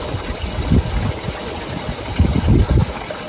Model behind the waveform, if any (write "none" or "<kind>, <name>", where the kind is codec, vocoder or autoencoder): none